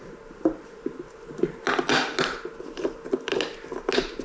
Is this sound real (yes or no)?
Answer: yes